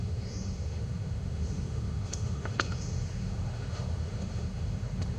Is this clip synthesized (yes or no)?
yes